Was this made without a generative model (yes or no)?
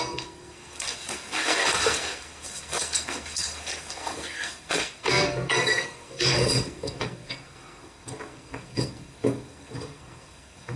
no